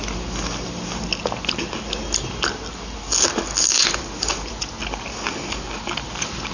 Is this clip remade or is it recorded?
recorded